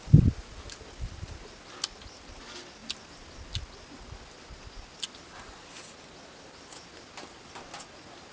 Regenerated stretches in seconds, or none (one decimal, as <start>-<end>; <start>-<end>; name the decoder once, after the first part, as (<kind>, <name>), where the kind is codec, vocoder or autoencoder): none